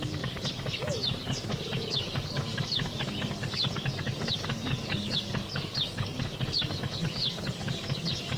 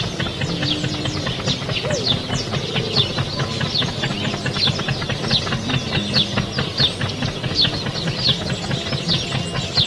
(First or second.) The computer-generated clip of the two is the first